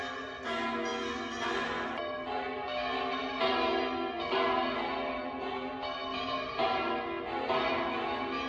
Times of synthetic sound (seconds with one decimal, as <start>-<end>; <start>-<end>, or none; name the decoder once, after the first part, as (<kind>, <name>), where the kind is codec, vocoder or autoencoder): 6.1-6.9 (vocoder, BigVGAN v2)